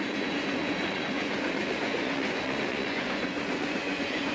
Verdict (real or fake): fake